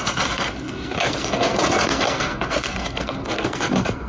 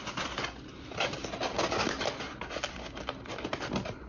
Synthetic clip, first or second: first